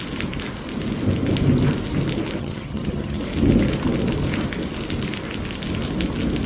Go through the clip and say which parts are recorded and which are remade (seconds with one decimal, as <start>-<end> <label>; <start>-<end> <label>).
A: 0.0-2.4 recorded; 2.4-3.2 remade; 3.2-6.5 recorded